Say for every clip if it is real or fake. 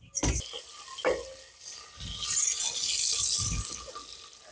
real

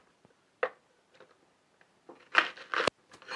real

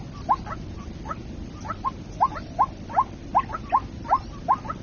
real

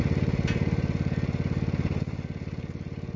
real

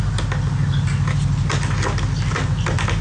real